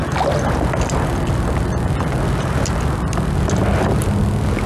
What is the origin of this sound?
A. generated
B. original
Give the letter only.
B